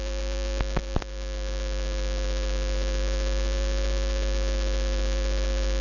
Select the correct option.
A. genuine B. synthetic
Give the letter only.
A